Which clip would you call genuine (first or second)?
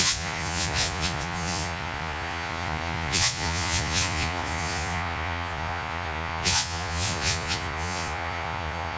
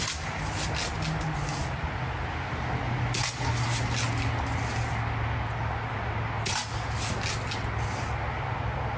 second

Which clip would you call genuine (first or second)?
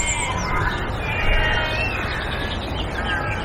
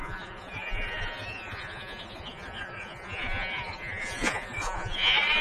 first